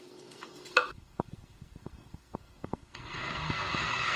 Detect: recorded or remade remade